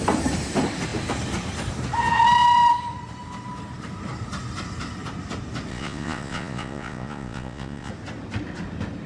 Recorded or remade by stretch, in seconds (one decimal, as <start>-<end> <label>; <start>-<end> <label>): 0.0-5.7 recorded; 5.7-7.9 remade; 7.9-9.1 recorded